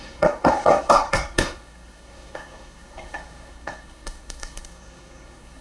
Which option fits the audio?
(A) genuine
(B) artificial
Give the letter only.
B